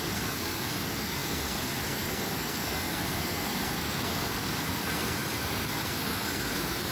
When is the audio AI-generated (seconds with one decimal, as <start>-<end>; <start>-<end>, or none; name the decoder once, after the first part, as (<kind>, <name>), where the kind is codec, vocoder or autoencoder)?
0.0-6.9 (codec, SNAC)